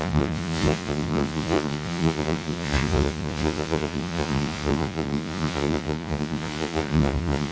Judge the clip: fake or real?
fake